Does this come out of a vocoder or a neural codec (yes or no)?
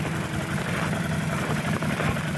yes